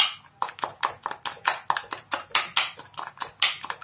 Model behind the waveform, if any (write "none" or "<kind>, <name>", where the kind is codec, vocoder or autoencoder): none